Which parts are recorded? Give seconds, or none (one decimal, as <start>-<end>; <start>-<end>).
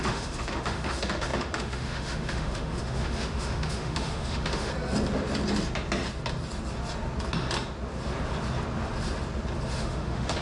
4.7-9.7